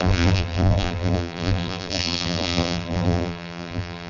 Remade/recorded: remade